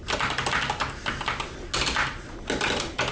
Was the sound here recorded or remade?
recorded